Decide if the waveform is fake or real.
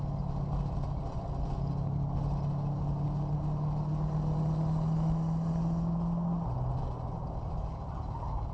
real